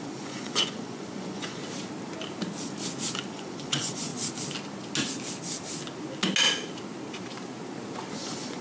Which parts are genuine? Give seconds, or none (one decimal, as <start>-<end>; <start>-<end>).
1.6-3.3; 4.1-8.1